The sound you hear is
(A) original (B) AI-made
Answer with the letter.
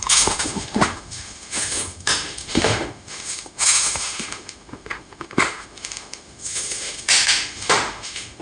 B